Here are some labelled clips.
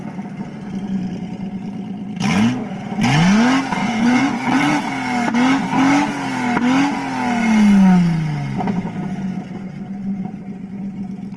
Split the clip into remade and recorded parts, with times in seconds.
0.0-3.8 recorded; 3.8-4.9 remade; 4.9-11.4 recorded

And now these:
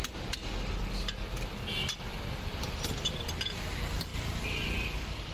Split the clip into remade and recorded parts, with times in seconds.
0.0-2.1 recorded; 2.1-3.1 remade; 3.1-5.3 recorded

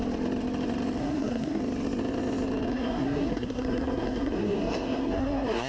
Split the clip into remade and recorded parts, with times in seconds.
0.0-1.0 recorded; 1.0-1.6 remade; 1.6-2.7 recorded; 2.7-5.7 remade

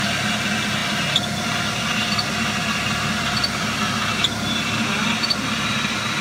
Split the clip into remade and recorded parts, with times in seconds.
0.0-6.2 recorded

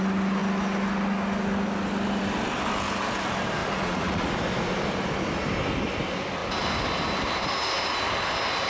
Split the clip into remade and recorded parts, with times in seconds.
0.0-3.6 recorded; 3.6-4.3 remade; 4.3-8.7 recorded

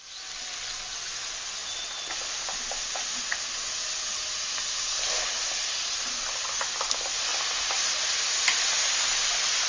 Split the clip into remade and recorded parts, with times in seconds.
0.0-9.7 recorded